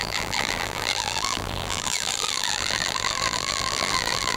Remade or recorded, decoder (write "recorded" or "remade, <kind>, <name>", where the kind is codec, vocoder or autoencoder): remade, vocoder, BigVGAN v2